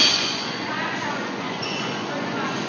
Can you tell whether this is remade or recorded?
remade